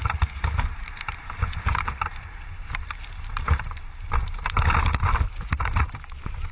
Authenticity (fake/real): real